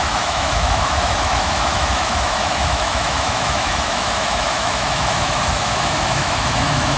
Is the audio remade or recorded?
remade